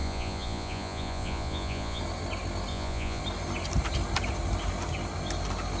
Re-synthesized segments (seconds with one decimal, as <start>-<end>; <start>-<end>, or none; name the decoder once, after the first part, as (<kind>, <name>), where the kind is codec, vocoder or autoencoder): 0.0-2.0 (vocoder, Vocos); 2.7-3.2